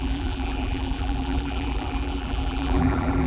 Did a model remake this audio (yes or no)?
yes